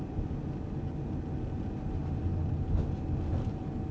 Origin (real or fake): real